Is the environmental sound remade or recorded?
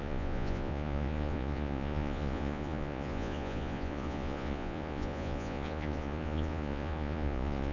remade